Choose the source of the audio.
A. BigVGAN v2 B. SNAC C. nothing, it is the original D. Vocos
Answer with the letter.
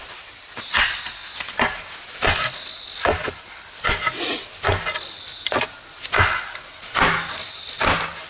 C